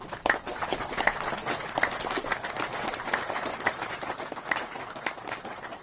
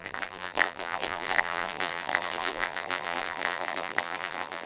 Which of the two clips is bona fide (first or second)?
first